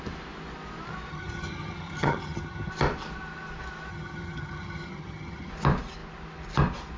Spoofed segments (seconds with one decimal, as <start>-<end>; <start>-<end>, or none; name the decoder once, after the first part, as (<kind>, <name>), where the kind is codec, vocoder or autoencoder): 1.1-2.7 (vocoder, HiFi-GAN); 3.9-5.5